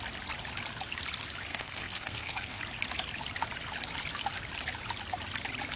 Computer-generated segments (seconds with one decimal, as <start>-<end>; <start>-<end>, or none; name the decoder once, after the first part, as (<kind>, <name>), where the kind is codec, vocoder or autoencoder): 1.5-2.6 (codec, SNAC)